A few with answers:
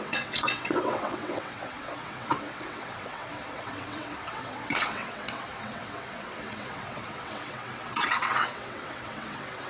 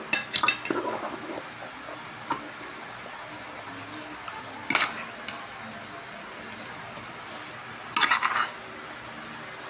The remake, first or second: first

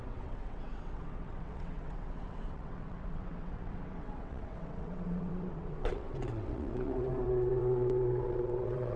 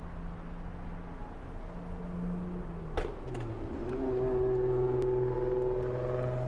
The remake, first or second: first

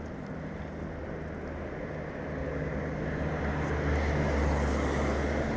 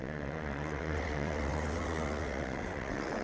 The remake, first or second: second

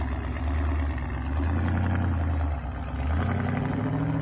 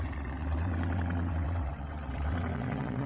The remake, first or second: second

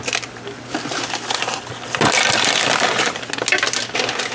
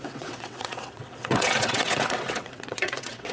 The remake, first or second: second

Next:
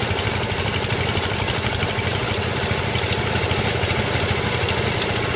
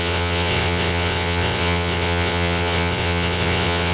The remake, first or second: second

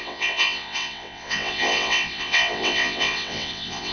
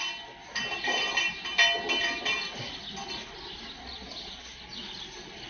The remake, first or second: first